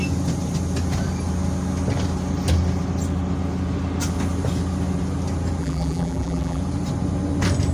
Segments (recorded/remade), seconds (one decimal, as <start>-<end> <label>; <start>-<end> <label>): 0.0-5.6 recorded; 5.6-6.6 remade; 6.6-7.7 recorded